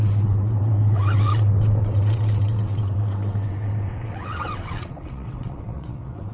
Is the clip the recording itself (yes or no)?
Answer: no